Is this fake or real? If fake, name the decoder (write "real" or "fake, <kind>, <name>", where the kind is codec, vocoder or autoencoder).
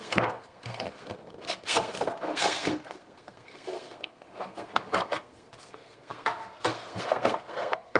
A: fake, codec, SNAC